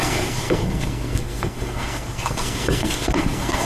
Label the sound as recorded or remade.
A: remade